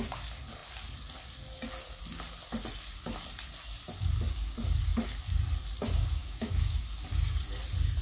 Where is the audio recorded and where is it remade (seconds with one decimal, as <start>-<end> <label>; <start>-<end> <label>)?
0.0-6.2 recorded; 6.2-6.8 remade; 6.8-8.0 recorded